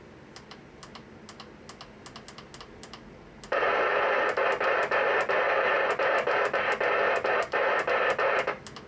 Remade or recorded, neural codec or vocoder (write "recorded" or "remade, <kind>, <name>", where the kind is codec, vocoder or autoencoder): recorded